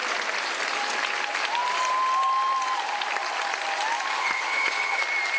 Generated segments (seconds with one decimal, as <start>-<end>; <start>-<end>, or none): 4.1-5.0